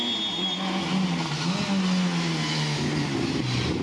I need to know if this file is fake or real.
real